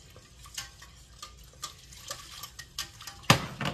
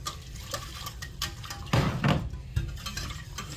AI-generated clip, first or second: second